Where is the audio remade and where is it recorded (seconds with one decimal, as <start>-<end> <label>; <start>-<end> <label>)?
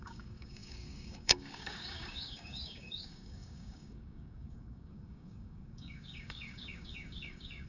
0.0-7.7 remade